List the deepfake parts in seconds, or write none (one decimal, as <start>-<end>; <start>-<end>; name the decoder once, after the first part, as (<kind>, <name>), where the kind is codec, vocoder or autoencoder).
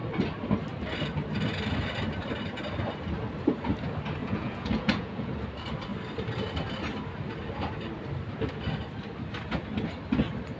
4.2-5.3 (vocoder, Vocos)